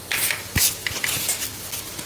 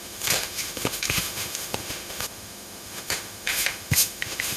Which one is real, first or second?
first